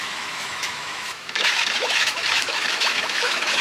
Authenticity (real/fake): fake